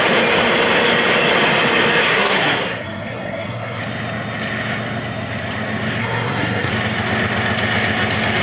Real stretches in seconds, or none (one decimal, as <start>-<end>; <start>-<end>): 0.0-2.0; 3.8-6.0; 6.7-8.4